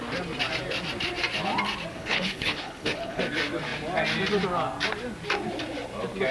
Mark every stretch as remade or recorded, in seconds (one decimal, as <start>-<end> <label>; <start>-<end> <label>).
0.0-1.9 recorded; 1.9-3.2 remade; 3.2-6.3 recorded